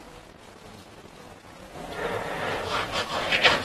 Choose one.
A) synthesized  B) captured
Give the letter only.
A